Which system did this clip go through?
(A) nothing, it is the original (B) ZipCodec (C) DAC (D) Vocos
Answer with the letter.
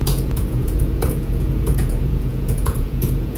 D